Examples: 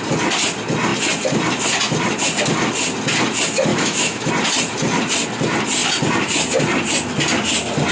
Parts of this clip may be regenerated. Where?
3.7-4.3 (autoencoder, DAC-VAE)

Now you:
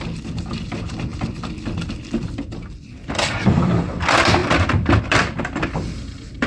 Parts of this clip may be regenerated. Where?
0.0-6.5 (vocoder, BigVGAN v2)

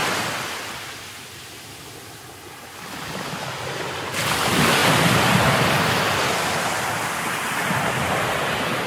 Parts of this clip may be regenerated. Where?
none

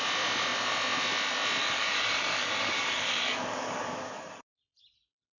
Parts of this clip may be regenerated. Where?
1.6-4.4 (codec, DAC)

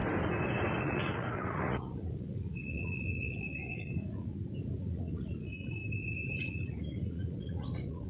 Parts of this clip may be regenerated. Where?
0.8-4.3 (vocoder, Vocos); 4.8-5.8; 6.4-8.1

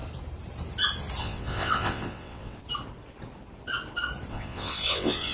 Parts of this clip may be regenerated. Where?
1.2-2.6 (vocoder, WaveNeXt); 4.3-5.3